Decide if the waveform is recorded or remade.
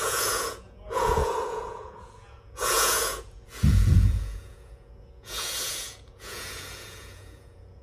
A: remade